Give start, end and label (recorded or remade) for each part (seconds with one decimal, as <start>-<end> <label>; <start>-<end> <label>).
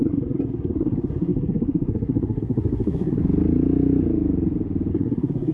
0.0-3.2 remade; 3.2-4.9 recorded; 4.9-5.5 remade